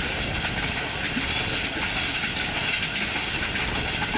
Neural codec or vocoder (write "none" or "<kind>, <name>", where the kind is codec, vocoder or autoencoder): none